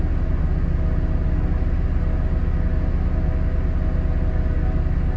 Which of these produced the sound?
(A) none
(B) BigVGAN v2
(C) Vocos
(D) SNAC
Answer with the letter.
A